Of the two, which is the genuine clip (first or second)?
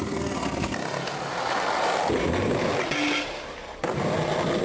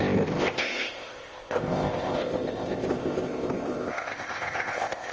first